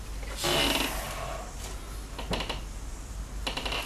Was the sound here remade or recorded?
recorded